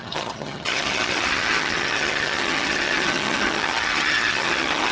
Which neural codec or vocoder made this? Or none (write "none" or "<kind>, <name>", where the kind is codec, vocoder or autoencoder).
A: vocoder, HiFi-GAN